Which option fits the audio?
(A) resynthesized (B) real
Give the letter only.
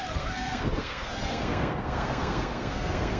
A